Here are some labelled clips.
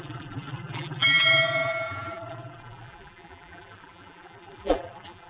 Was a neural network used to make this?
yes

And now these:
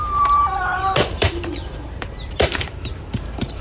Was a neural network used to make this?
yes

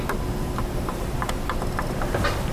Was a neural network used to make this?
no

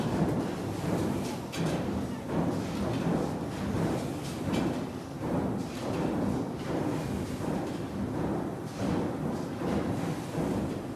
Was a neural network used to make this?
yes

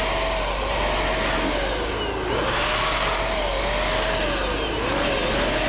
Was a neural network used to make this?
no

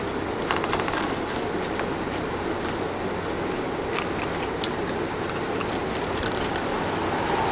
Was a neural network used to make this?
no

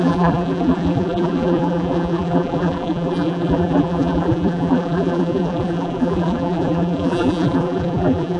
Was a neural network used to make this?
yes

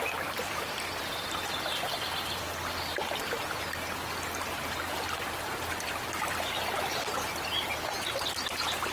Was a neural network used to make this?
no